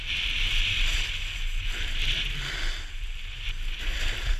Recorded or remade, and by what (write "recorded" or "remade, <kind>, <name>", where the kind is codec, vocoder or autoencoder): recorded